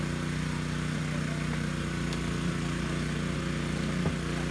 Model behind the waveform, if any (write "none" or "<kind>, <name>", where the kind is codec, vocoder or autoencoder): none